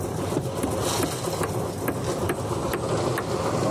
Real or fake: real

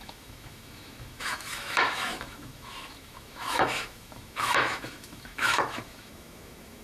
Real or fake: fake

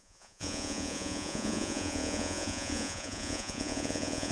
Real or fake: fake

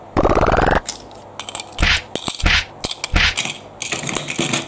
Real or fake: real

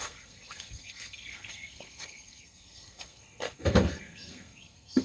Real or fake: fake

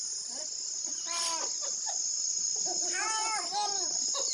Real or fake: real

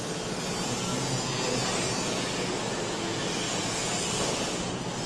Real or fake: real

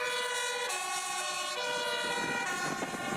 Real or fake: real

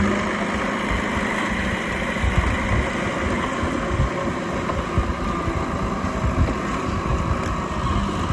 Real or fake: real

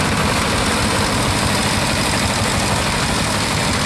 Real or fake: real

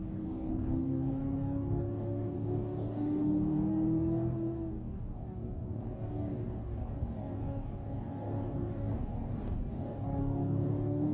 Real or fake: fake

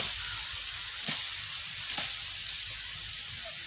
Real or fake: fake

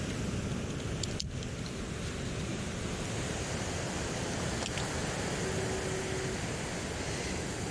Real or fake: real